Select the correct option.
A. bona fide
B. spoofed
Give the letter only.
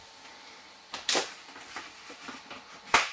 B